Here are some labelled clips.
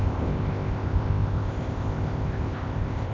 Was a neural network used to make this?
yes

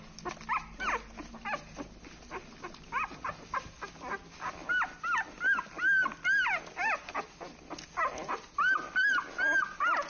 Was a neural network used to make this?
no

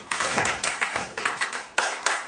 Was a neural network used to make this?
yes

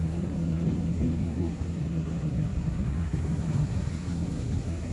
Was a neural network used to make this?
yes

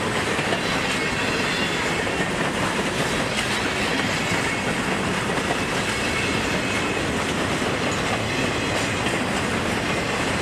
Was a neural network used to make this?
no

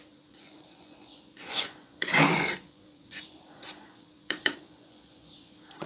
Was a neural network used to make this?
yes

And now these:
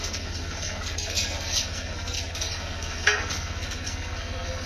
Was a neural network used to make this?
yes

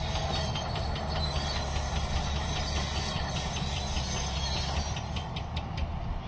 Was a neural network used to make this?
no